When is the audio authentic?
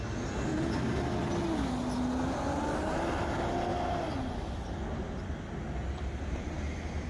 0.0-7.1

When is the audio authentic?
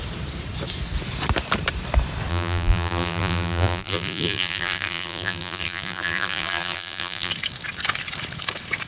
0.0-2.3; 7.3-8.9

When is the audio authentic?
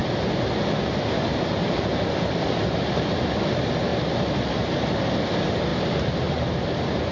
0.0-5.7